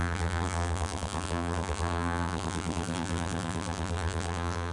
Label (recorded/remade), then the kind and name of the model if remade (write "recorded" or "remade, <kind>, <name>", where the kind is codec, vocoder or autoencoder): remade, vocoder, BigVGAN v2